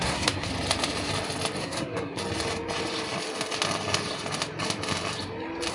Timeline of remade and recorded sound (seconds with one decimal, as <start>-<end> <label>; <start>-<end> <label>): 0.0-0.5 remade; 0.5-1.6 recorded; 1.6-2.2 remade; 2.2-5.7 recorded